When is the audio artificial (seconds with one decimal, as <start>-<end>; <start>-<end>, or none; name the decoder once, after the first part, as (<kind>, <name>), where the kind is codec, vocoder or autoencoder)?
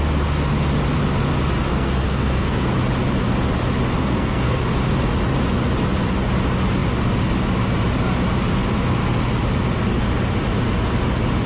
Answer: 1.7-2.7 (codec, SNAC); 4.0-4.6